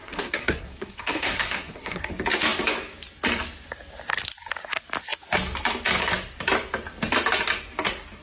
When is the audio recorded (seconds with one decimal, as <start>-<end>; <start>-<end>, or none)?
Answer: 2.1-8.2